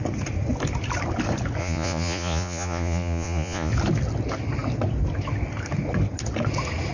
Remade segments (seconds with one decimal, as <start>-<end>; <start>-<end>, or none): 1.6-3.7

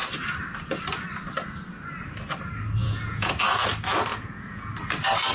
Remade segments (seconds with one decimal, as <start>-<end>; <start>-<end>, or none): 2.8-3.4; 4.1-4.7